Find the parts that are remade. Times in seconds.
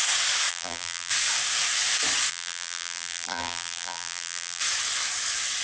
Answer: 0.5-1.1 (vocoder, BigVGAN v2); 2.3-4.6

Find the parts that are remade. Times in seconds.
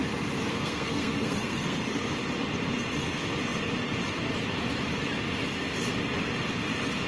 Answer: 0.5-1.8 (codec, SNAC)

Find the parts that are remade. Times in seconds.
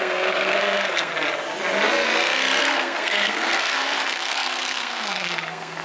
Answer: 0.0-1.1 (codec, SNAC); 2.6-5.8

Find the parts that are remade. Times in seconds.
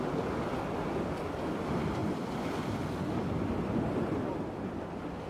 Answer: none